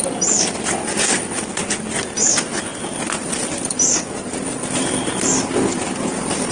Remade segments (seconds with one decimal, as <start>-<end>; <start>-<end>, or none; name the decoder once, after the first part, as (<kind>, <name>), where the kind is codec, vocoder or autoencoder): none